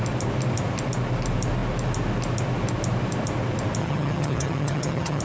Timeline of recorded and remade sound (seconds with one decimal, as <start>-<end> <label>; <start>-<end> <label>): 0.0-3.8 recorded; 3.8-5.2 remade